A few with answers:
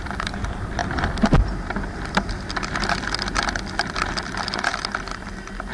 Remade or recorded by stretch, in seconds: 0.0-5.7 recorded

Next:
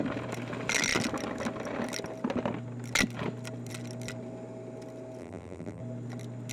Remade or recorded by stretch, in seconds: 0.0-5.2 recorded; 5.2-5.8 remade; 5.8-6.5 recorded

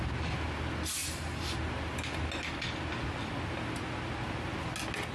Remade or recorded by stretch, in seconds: 0.0-1.0 recorded; 1.0-1.6 remade; 1.6-5.1 recorded

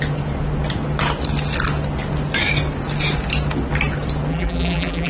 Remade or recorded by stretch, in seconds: 0.0-4.3 recorded; 4.3-5.1 remade

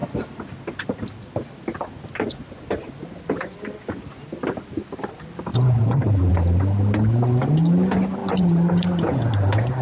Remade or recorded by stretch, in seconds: 0.0-5.5 recorded; 5.5-6.3 remade; 6.3-9.8 recorded

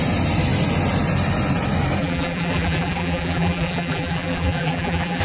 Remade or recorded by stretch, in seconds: 0.0-2.0 recorded; 2.0-5.2 remade